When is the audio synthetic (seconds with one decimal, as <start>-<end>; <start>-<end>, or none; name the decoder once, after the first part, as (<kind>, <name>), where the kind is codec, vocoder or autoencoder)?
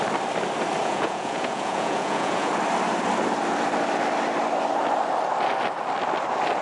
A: 0.8-2.5 (vocoder, Vocos)